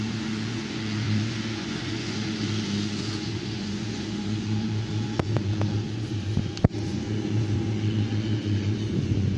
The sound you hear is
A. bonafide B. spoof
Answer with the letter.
B